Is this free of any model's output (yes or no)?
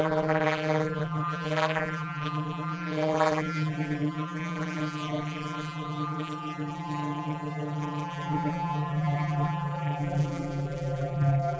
no